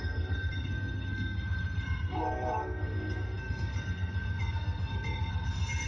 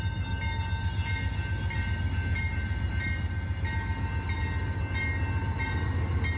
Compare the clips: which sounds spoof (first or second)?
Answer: first